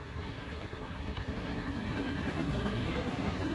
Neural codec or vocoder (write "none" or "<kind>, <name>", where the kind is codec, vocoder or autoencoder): codec, SNAC